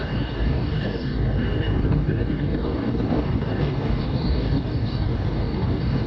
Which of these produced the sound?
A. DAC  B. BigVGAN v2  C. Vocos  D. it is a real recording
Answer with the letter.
A